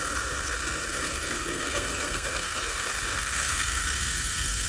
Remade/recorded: remade